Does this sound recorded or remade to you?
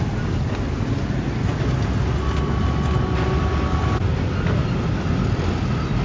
recorded